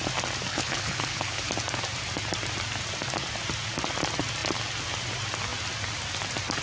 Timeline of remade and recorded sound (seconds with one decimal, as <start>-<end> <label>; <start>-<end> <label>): 0.0-0.5 recorded; 0.5-1.5 remade; 1.5-6.6 recorded